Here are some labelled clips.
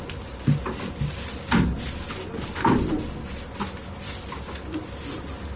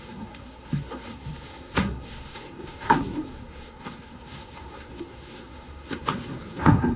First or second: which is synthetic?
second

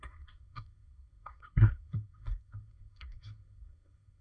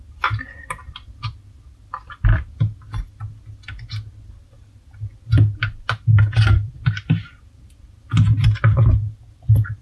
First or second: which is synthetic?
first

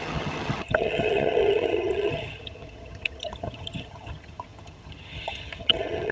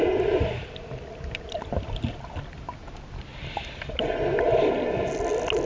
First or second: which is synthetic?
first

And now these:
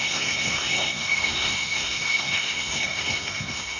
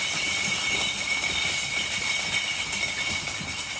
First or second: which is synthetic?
first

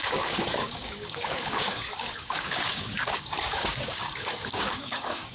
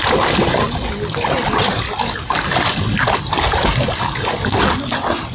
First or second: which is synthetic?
first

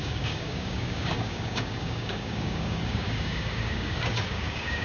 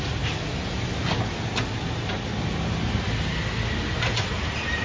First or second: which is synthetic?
first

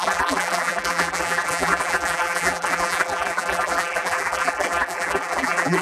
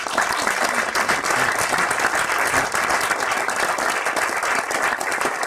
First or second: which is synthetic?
first